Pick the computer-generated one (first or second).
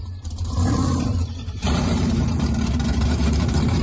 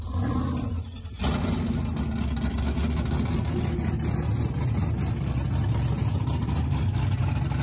first